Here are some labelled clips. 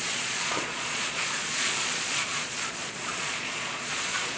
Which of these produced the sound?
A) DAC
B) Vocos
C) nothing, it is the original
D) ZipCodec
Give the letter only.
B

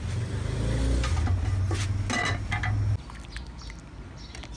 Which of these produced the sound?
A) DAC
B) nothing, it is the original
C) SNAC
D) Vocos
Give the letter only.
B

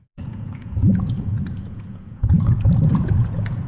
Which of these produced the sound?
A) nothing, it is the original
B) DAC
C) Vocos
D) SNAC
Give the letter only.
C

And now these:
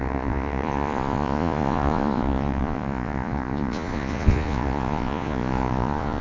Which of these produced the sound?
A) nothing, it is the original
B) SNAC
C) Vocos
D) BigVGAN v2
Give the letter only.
C